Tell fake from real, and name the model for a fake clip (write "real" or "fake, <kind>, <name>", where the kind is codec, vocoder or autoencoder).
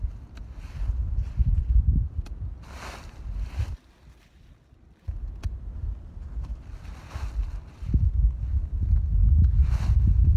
real